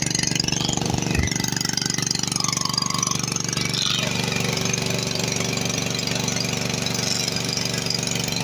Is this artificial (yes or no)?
no